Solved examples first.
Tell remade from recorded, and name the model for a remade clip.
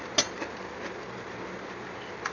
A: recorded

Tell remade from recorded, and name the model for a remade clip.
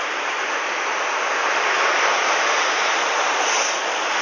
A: recorded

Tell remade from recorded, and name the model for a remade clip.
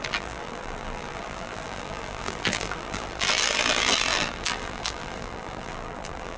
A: remade, vocoder, BigVGAN v2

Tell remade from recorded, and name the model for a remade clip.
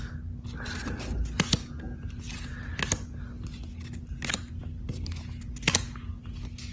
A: recorded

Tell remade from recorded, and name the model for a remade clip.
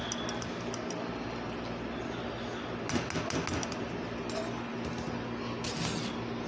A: recorded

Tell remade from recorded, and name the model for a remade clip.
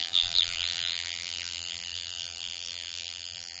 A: remade, vocoder, BigVGAN v2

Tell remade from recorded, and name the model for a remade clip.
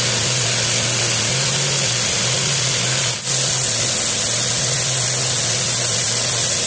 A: recorded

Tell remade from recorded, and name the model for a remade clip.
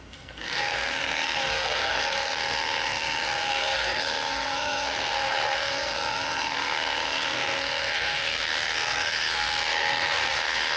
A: remade, codec, SNAC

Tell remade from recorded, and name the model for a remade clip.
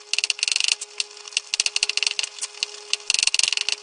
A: recorded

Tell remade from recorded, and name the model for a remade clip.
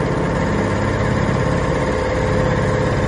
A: recorded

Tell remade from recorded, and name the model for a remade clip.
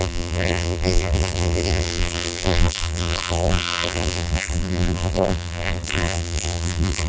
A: remade, vocoder, BigVGAN v2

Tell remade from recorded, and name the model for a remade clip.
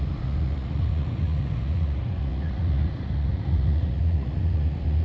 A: remade, vocoder, Vocos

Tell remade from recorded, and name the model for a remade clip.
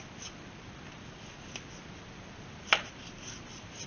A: recorded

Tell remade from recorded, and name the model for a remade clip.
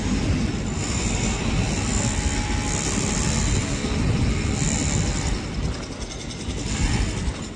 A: recorded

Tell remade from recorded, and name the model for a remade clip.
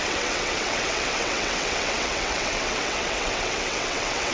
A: remade, vocoder, WaveNeXt